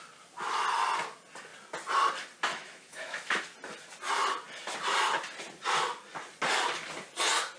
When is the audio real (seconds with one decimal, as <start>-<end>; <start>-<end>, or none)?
0.0-2.5; 3.4-7.6